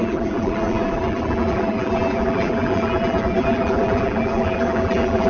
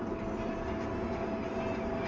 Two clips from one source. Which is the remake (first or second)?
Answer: first